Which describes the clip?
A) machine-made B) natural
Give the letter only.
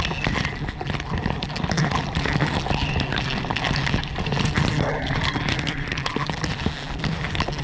B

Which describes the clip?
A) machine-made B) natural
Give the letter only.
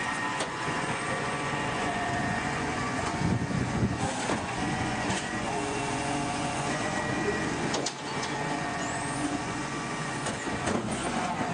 A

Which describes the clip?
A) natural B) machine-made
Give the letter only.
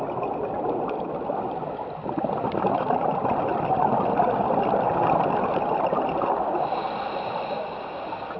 A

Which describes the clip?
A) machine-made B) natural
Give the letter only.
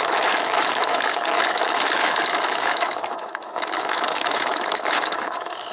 A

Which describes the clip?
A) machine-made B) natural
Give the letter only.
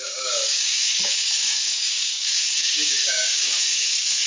A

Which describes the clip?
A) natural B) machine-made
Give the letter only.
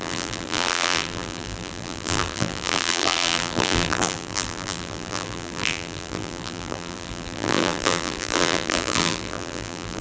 B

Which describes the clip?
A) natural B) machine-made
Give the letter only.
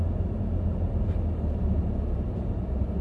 A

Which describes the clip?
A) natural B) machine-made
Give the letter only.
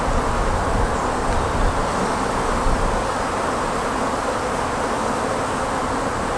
A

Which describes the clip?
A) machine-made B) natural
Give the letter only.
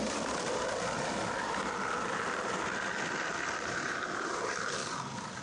A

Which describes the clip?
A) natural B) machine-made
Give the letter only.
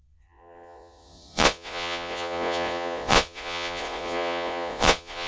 B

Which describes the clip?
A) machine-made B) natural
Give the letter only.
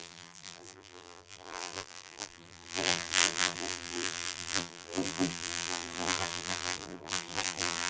A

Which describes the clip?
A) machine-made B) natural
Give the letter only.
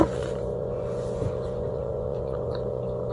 A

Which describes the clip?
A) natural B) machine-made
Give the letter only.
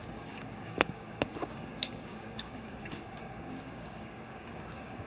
B